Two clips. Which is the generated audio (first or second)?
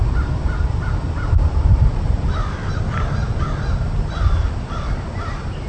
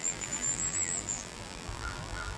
second